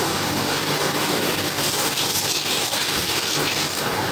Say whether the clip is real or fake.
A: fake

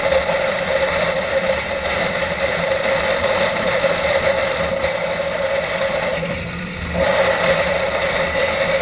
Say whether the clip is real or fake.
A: fake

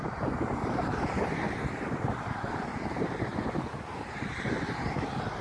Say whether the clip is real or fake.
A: fake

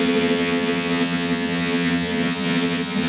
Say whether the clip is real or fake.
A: fake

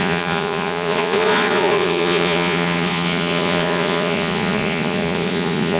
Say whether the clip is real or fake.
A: fake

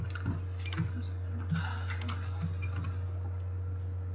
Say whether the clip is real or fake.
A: real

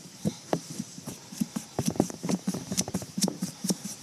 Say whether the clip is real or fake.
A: fake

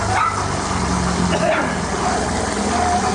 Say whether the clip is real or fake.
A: real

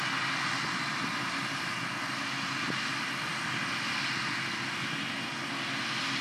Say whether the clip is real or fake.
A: real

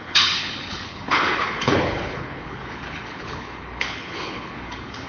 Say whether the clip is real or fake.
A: fake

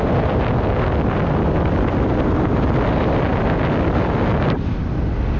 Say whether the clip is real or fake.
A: real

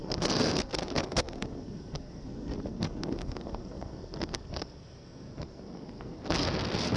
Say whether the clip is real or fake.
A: fake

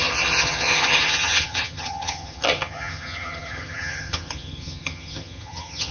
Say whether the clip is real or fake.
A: fake